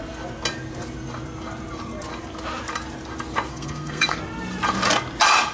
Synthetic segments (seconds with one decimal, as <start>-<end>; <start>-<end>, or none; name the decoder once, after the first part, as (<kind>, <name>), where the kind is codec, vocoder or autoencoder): 3.5-4.2 (codec, SNAC)